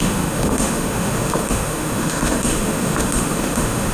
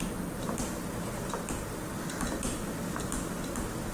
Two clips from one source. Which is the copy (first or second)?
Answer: first